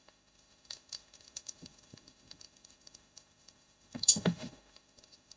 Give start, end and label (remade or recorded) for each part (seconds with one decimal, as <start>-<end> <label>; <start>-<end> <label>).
0.0-5.4 remade